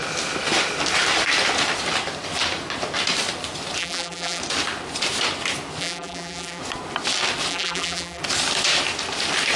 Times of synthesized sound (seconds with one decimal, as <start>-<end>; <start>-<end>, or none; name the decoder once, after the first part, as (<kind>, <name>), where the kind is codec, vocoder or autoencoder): 3.8-4.4 (vocoder, BigVGAN v2); 5.8-6.6; 7.5-8.2